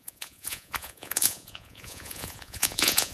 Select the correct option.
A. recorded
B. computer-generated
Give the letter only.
B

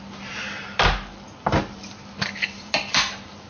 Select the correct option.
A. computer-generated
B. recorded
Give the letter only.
B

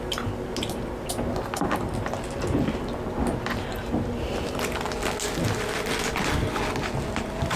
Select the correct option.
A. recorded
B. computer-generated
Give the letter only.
A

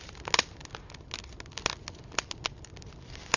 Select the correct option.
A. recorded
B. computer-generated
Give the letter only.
A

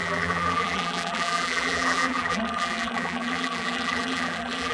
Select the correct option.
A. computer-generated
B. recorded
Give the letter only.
A